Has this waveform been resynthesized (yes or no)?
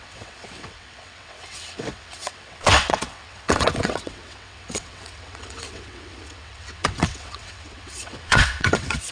yes